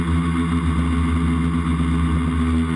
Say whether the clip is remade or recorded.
recorded